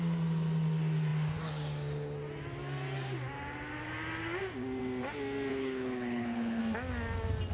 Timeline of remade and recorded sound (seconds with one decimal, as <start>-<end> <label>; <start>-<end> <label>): 0.0-5.5 recorded; 5.5-6.6 remade; 6.6-7.5 recorded